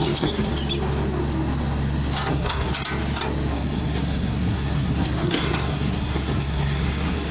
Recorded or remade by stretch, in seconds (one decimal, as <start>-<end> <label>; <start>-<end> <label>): 0.0-0.5 remade; 0.5-2.3 recorded; 2.3-2.7 remade; 2.7-3.5 recorded; 3.5-7.3 remade